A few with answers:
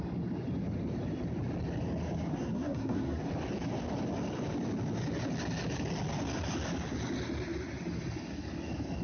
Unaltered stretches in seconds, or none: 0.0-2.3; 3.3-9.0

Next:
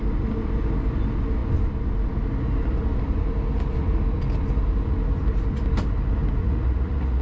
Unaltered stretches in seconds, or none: 0.0-6.4